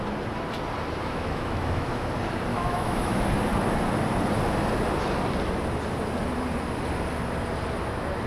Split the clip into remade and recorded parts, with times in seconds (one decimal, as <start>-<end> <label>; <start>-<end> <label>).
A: 0.0-1.0 recorded; 1.0-2.1 remade; 2.1-2.5 recorded; 2.5-3.2 remade; 3.2-8.3 recorded